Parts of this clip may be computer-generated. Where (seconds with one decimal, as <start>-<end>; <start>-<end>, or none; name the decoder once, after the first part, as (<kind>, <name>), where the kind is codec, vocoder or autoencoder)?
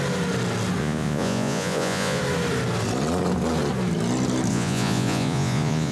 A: 0.8-2.2 (vocoder, Vocos); 4.5-5.9